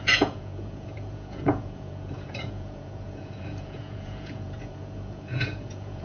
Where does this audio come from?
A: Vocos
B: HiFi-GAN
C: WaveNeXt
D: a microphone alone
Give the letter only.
A